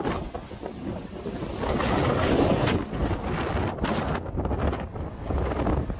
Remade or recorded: recorded